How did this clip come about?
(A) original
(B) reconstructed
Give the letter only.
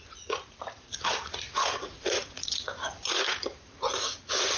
B